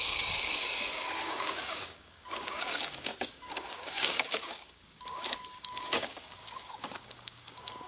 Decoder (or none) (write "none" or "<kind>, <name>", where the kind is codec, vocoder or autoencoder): codec, DAC